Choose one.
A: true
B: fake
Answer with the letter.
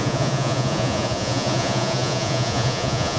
B